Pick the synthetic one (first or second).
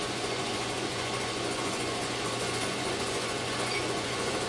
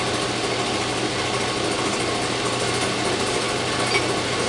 first